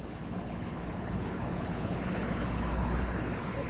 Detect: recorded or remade remade